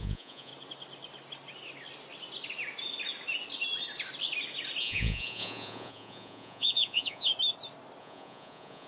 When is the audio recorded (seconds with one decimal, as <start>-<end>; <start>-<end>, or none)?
0.5-4.8; 7.3-8.0

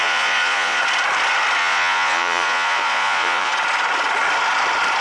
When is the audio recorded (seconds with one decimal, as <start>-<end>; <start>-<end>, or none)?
0.8-1.6; 3.5-5.0

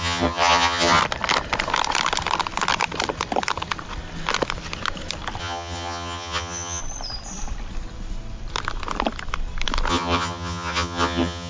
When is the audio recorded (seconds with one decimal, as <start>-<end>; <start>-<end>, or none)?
1.0-5.4; 6.8-9.9

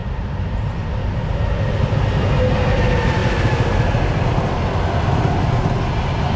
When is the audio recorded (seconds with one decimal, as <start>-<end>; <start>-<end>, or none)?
0.0-6.4

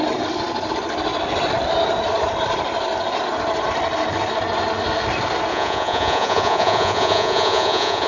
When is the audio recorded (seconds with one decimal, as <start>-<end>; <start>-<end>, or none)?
0.0-5.5

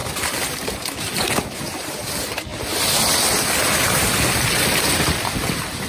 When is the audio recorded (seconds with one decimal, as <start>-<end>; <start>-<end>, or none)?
0.0-5.9

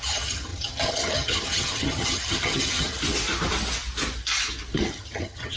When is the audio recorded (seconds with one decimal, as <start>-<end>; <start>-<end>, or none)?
3.0-4.7

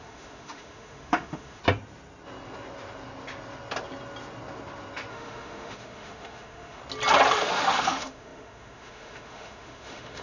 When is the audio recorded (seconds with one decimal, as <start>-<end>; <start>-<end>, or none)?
1.6-5.1; 6.8-7.3